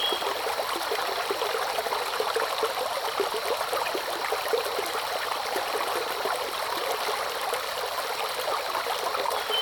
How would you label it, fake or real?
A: real